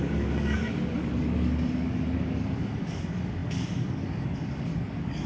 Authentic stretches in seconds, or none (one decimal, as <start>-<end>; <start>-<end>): none